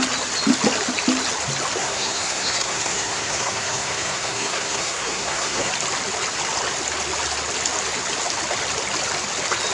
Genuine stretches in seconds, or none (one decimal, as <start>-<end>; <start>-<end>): 0.0-1.8; 5.7-9.7